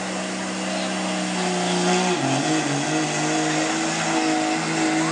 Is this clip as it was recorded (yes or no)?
yes